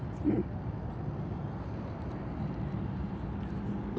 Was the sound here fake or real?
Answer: real